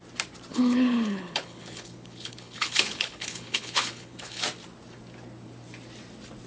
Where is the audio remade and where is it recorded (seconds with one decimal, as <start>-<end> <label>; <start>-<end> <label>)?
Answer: 0.0-0.5 recorded; 0.5-4.4 remade; 4.4-6.5 recorded